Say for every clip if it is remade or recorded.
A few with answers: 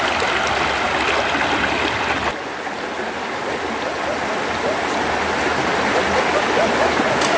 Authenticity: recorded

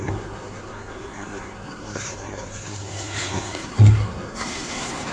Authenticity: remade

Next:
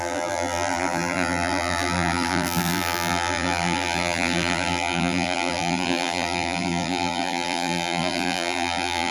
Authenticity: remade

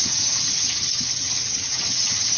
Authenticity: remade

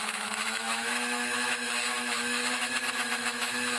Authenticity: remade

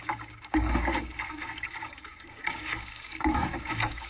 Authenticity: remade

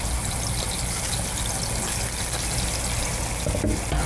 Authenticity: recorded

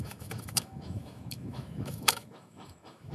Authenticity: remade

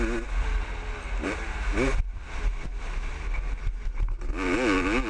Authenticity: recorded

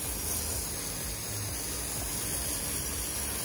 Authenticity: recorded